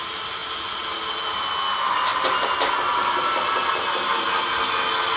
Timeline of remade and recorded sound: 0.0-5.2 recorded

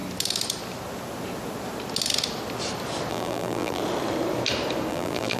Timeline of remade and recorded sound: 0.0-3.1 recorded; 3.1-3.8 remade; 3.8-4.9 recorded; 4.9-5.4 remade

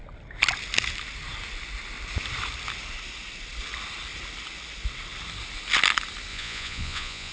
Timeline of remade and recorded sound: 0.0-6.3 recorded; 6.3-7.3 remade

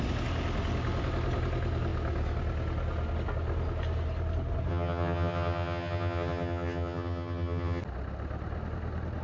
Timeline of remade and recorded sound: 0.0-4.7 recorded; 4.7-7.8 remade; 7.8-9.2 recorded

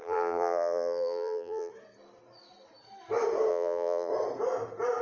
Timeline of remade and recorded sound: 0.0-1.7 remade; 1.7-3.5 recorded; 3.5-4.1 remade; 4.1-5.0 recorded

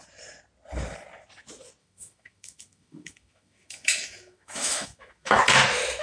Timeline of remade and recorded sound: 0.0-1.8 recorded; 1.8-5.4 remade; 5.4-6.0 recorded

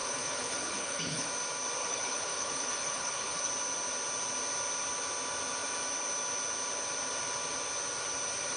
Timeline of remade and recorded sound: 0.0-1.3 remade; 1.3-1.8 recorded; 1.8-3.5 remade; 3.5-8.6 recorded